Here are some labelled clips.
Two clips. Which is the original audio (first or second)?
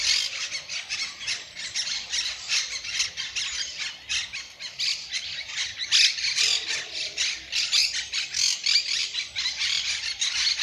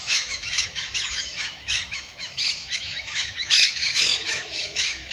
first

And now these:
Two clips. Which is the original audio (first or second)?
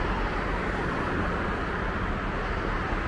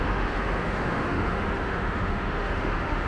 first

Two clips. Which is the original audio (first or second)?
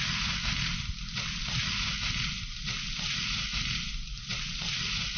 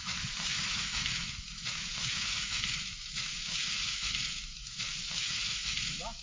first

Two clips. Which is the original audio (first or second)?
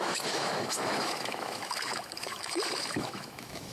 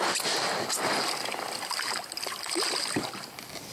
second